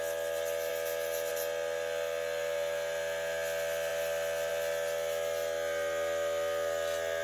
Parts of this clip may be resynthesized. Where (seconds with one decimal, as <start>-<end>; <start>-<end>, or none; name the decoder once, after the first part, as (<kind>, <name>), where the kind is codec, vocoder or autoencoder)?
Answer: none